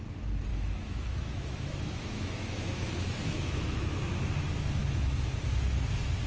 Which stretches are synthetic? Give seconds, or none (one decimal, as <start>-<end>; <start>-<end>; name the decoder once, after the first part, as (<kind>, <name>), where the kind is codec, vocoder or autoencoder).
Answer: 0.5-4.3 (autoencoder, DAC-VAE); 4.8-5.4